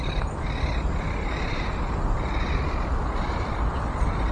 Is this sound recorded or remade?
recorded